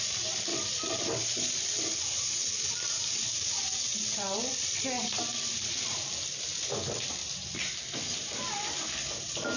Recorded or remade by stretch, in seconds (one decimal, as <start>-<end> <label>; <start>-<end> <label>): 0.0-9.6 remade